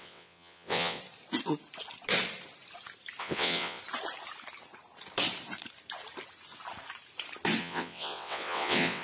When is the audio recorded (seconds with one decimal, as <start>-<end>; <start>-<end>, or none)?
1.0-3.2; 3.8-7.6